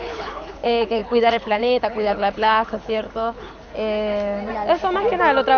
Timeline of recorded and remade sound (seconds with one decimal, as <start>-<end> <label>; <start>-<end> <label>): 0.0-3.7 remade; 3.7-5.6 recorded